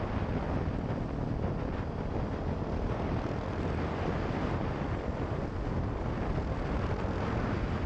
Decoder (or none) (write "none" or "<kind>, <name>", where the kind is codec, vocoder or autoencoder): none